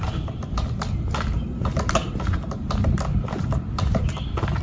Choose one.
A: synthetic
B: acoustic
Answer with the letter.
B